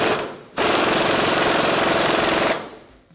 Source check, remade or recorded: remade